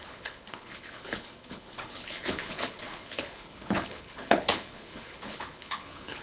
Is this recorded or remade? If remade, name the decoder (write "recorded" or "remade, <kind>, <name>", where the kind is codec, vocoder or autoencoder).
remade, codec, HILCodec